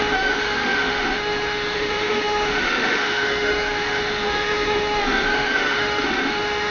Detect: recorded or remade remade